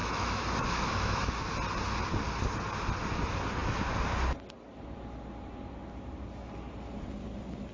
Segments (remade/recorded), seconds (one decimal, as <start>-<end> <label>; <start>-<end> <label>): 0.0-1.4 remade; 1.4-7.7 recorded